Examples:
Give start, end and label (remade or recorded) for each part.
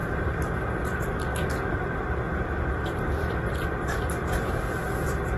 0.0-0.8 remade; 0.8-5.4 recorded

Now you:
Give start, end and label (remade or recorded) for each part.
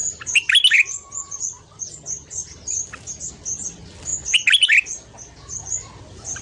0.0-6.4 recorded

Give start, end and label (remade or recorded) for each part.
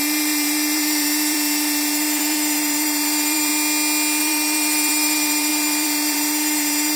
0.0-3.5 remade; 3.5-4.2 recorded; 4.2-7.0 remade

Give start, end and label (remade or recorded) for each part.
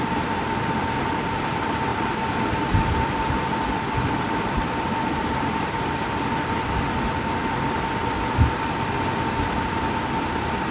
0.0-1.9 recorded; 1.9-6.7 remade; 6.7-10.7 recorded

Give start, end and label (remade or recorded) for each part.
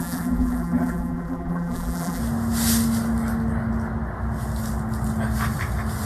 0.0-2.2 remade; 2.2-6.1 recorded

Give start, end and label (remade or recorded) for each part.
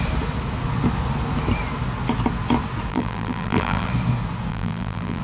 0.0-2.9 recorded; 2.9-3.9 remade; 3.9-4.5 recorded; 4.5-5.2 remade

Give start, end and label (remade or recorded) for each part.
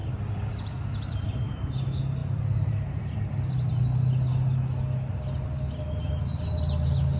0.0-1.6 remade; 1.6-2.2 recorded; 2.2-3.0 remade; 3.0-7.2 recorded